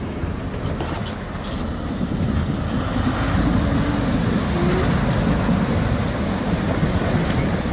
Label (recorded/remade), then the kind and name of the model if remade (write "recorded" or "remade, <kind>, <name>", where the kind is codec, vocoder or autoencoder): recorded